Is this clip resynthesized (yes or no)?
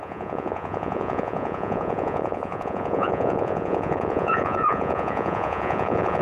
yes